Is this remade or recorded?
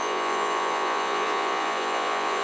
remade